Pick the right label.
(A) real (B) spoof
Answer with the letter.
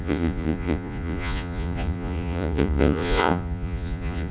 B